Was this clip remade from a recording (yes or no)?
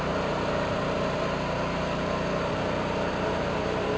yes